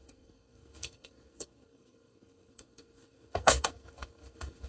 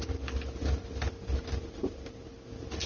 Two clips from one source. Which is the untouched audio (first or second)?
second